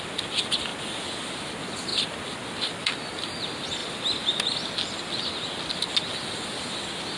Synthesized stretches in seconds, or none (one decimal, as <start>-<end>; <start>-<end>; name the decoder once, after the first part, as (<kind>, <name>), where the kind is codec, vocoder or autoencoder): none